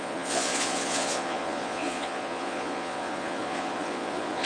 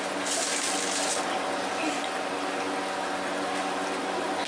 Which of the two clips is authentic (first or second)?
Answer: second